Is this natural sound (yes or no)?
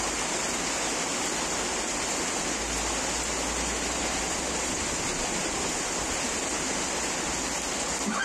yes